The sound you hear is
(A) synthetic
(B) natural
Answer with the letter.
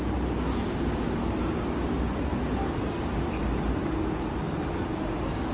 B